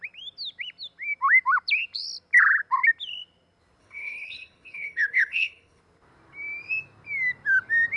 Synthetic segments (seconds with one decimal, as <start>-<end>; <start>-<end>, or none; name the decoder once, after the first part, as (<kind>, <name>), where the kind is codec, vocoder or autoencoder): 3.8-5.8 (codec, HILCodec)